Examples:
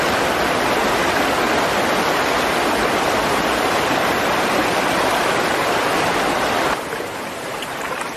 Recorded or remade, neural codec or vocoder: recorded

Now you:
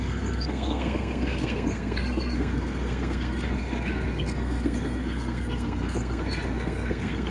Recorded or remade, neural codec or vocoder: remade, codec, SNAC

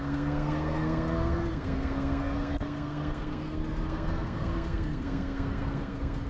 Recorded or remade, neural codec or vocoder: remade, codec, SNAC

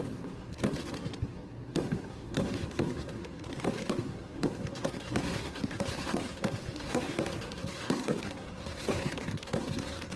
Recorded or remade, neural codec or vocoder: remade, codec, SNAC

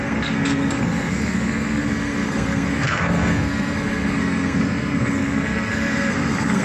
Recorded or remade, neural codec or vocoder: remade, codec, SNAC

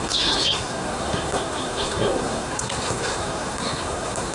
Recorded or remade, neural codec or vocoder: remade, codec, SNAC